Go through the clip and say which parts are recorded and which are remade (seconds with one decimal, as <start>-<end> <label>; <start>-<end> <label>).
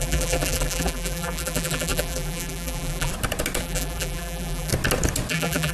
0.0-3.1 remade; 3.1-3.6 recorded; 3.6-4.7 remade; 4.7-5.3 recorded; 5.3-5.7 remade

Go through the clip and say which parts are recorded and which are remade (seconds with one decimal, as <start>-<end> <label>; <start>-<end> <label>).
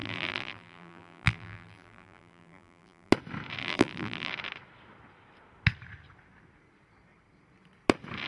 0.0-3.1 remade; 3.1-3.6 recorded; 3.6-4.3 remade; 4.3-8.3 recorded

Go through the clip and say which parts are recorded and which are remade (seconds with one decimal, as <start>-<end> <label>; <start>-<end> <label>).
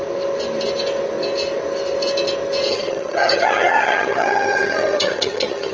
0.0-2.7 recorded; 2.7-5.7 remade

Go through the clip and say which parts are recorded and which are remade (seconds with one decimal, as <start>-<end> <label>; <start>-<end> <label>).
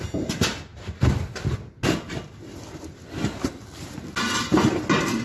0.0-5.2 recorded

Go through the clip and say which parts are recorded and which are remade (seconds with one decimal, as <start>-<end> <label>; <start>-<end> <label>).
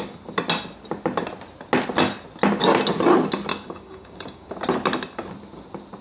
0.0-3.5 recorded; 3.5-4.5 remade; 4.5-6.0 recorded